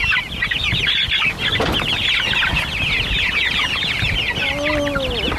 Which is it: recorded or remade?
recorded